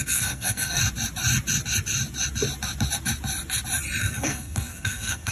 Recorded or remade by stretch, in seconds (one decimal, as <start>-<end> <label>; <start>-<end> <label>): 0.0-0.8 remade; 0.8-4.0 recorded; 4.0-5.3 remade